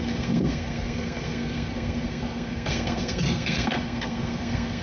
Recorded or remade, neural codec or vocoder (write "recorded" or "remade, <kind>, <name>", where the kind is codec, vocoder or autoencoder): remade, codec, SNAC